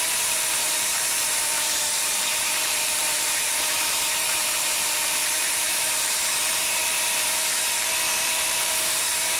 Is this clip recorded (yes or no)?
no